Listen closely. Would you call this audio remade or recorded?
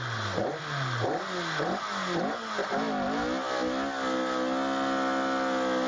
recorded